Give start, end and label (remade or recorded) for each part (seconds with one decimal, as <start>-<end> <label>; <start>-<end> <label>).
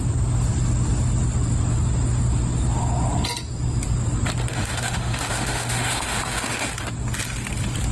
0.0-4.5 recorded; 4.5-6.7 remade; 6.7-7.9 recorded